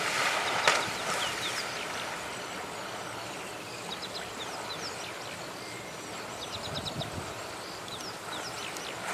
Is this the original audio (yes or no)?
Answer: yes